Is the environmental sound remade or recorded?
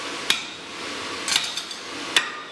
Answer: recorded